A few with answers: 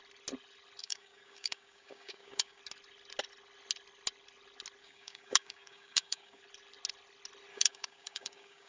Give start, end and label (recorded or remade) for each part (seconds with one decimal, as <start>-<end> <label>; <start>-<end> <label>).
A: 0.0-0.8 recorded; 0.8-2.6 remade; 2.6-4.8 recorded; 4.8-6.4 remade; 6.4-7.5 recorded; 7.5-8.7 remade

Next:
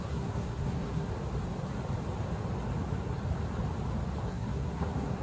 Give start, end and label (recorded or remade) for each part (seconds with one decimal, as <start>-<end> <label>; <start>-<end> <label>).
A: 0.0-1.1 remade; 1.1-4.2 recorded; 4.2-5.2 remade

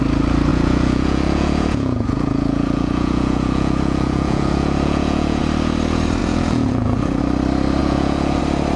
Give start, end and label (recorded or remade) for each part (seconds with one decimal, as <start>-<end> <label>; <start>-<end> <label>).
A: 0.0-0.5 recorded; 0.5-5.4 remade; 5.4-6.2 recorded; 6.2-7.2 remade; 7.2-7.8 recorded; 7.8-8.4 remade; 8.4-8.8 recorded

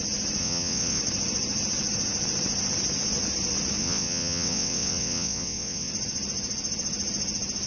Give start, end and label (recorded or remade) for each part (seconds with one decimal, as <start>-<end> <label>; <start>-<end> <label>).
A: 0.0-0.4 recorded; 0.4-1.0 remade; 1.0-3.8 recorded; 3.8-5.9 remade; 5.9-7.7 recorded

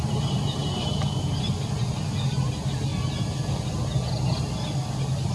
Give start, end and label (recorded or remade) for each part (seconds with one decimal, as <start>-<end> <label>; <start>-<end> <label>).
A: 0.0-5.3 recorded

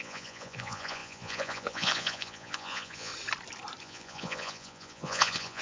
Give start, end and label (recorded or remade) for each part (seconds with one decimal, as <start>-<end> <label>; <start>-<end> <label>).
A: 0.0-3.1 remade; 3.1-3.8 recorded; 3.8-5.6 remade

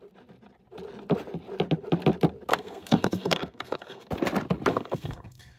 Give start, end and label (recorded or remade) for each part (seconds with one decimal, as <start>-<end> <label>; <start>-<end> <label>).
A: 0.0-2.5 recorded; 2.5-4.1 remade; 4.1-4.7 recorded; 4.7-5.6 remade